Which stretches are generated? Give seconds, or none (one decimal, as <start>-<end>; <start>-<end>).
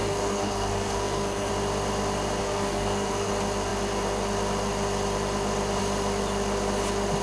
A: 0.0-1.5; 2.4-3.3